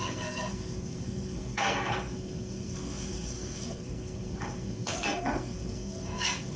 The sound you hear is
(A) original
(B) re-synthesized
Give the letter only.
B